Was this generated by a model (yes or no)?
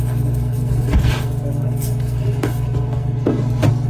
yes